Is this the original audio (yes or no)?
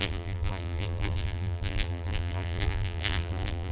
no